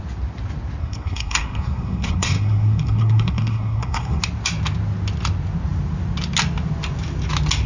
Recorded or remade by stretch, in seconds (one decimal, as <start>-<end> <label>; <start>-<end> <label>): 0.0-0.8 recorded; 0.8-4.2 remade; 4.2-7.7 recorded